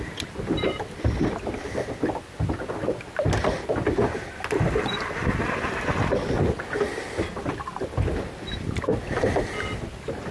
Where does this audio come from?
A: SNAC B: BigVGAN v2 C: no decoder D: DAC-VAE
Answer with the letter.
C